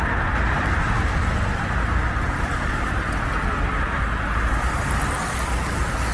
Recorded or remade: recorded